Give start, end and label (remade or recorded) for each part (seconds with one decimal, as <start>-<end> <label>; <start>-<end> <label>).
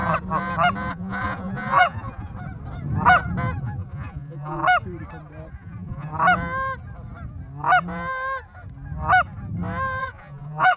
0.0-0.9 recorded; 0.9-2.3 remade; 2.3-3.6 recorded; 3.6-4.6 remade; 4.6-5.5 recorded; 5.5-6.1 remade; 6.1-10.0 recorded; 10.0-10.8 remade